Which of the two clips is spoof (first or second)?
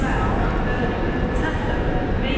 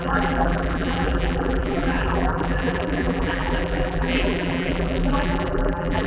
second